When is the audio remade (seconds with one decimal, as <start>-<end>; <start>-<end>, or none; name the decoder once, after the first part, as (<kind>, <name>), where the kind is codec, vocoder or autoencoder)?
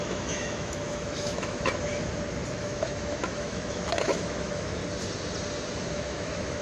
0.0-1.9 (autoencoder, DAC-VAE); 2.6-4.8; 5.9-6.6